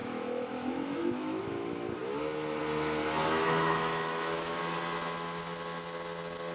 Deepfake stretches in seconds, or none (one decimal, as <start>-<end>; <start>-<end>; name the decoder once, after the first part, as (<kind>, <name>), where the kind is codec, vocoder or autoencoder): 0.0-1.4 (autoencoder, DAC-VAE); 3.0-4.6